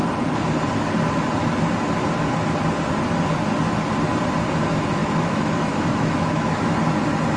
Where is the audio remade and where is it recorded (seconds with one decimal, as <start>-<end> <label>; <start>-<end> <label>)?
0.0-5.0 recorded; 5.0-6.8 remade; 6.8-7.4 recorded